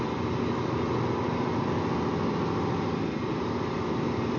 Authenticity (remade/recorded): recorded